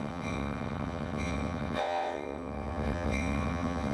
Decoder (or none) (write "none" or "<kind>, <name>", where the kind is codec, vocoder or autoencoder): vocoder, WaveNeXt